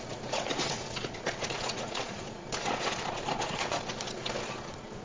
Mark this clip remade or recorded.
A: remade